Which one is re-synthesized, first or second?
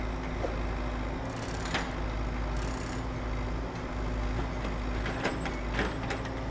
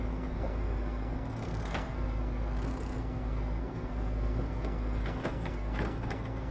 second